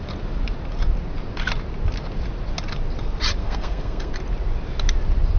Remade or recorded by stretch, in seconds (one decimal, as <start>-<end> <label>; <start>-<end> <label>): 0.0-3.4 recorded; 3.4-4.1 remade; 4.1-5.4 recorded